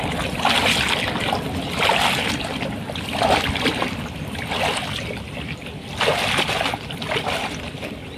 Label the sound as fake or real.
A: real